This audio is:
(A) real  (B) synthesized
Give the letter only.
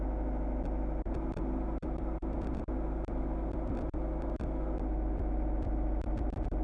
A